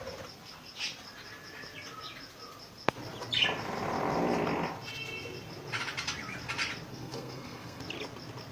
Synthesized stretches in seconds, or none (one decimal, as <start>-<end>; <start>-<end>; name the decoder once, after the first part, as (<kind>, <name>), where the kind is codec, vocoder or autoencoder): 6.9-7.8 (codec, SNAC)

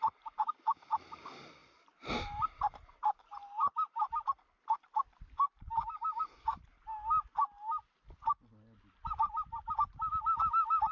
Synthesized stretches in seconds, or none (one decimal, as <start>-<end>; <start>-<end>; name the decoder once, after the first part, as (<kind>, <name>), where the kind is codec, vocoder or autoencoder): 1.6-2.9 (vocoder, BigVGAN v2)